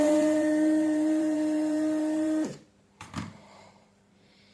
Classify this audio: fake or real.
fake